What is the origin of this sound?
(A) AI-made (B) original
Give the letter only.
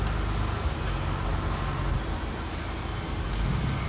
B